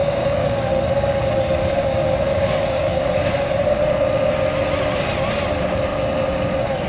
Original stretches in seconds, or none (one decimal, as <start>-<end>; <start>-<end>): 0.7-1.6; 3.8-6.9

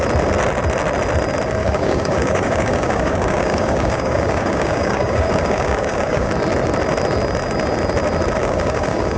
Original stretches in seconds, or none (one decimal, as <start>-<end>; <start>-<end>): 0.0-1.6; 6.3-8.4

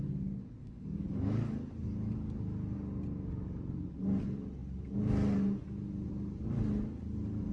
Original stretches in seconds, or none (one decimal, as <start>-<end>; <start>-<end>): 0.0-0.6; 1.7-7.5

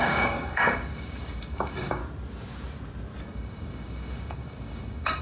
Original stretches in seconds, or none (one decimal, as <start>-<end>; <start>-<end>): 2.0-3.2

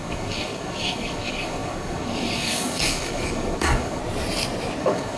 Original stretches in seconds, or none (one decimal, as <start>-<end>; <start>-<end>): 4.0-4.8

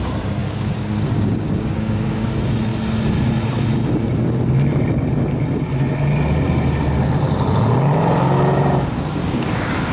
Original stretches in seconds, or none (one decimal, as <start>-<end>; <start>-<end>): 0.0-0.4; 2.3-9.2